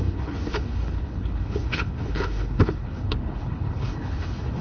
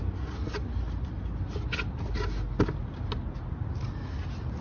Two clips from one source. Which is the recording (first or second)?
second